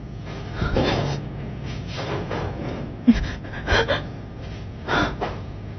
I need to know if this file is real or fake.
real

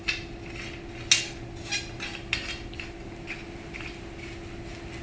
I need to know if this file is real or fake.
real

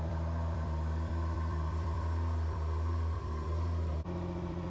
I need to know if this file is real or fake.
fake